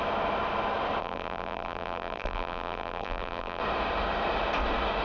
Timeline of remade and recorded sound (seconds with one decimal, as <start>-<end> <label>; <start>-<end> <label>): 0.0-1.0 recorded; 1.0-3.6 remade; 3.6-5.0 recorded